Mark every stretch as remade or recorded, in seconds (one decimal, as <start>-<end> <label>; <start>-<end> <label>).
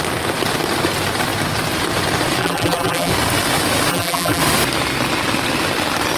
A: 0.0-2.4 recorded; 2.4-3.1 remade; 3.1-3.9 recorded; 3.9-4.4 remade; 4.4-6.2 recorded